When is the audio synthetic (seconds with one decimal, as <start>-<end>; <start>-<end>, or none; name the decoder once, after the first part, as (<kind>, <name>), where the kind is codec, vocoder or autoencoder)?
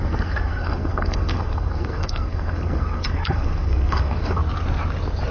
0.0-4.4 (codec, SNAC)